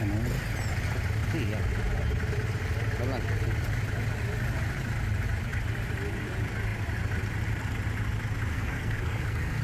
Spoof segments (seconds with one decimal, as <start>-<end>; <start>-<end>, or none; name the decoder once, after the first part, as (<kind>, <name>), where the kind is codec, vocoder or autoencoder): 8.5-9.6 (codec, SNAC)